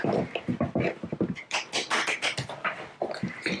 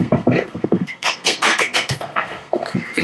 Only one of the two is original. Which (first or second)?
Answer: first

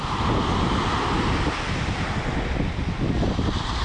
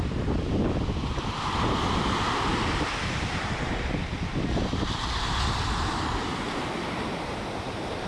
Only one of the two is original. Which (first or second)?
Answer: first